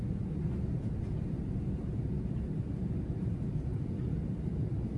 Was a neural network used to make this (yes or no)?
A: no